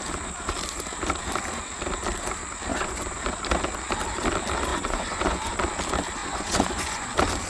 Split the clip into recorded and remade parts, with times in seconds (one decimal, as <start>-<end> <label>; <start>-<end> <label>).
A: 0.0-2.7 recorded; 2.7-3.2 remade; 3.2-4.7 recorded; 4.7-5.5 remade; 5.5-6.2 recorded; 6.2-7.1 remade; 7.1-7.5 recorded